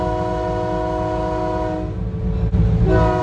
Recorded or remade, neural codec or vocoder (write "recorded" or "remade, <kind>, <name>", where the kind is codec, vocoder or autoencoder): recorded